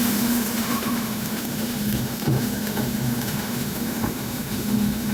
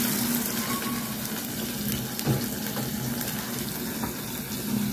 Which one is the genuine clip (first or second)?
second